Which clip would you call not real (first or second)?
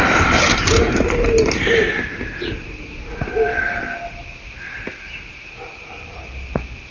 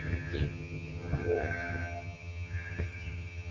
second